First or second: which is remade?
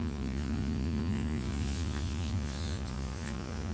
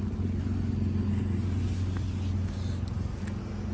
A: first